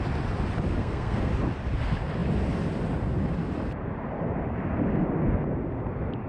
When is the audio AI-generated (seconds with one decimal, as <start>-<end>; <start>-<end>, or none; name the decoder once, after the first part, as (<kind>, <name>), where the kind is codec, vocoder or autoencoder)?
0.8-1.3 (codec, SNAC)